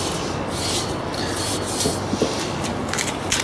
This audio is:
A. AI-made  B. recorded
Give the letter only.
B